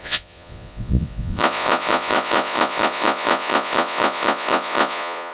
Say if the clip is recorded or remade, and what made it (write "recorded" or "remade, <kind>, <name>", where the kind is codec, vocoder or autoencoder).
remade, vocoder, Vocos